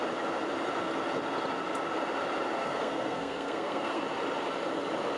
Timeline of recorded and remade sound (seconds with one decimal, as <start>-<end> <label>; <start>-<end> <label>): 0.0-2.6 recorded; 2.6-4.0 remade; 4.0-5.2 recorded

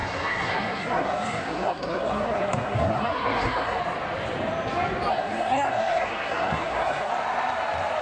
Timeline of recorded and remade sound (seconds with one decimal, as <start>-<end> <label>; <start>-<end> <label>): 0.0-3.8 remade; 3.8-5.1 recorded; 5.1-7.1 remade; 7.1-8.0 recorded

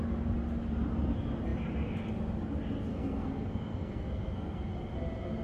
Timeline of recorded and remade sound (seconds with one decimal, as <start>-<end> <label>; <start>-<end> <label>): 0.0-2.9 recorded; 2.9-4.7 remade; 4.7-5.4 recorded

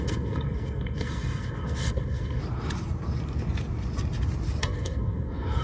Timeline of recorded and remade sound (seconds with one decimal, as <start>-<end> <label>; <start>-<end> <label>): 0.0-2.4 remade; 2.4-4.6 recorded; 4.6-5.6 remade

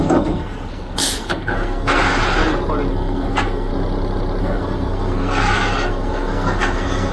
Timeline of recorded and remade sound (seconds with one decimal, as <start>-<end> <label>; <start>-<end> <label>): 0.0-2.2 remade; 2.2-2.9 recorded; 2.9-3.7 remade; 3.7-4.4 recorded; 4.4-7.1 remade

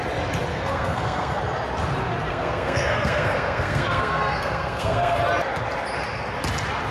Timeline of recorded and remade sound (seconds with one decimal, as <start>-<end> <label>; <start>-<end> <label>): 0.0-0.5 recorded; 0.5-1.4 remade; 1.4-2.3 recorded; 2.3-5.2 remade; 5.2-6.9 recorded

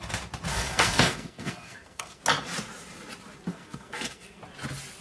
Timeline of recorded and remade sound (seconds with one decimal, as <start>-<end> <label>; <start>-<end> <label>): 0.0-0.5 recorded; 0.5-2.2 remade; 2.2-3.5 recorded; 3.5-4.4 remade; 4.4-5.0 recorded

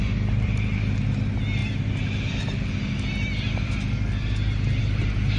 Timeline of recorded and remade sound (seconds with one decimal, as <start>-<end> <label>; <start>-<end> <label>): 0.0-5.4 recorded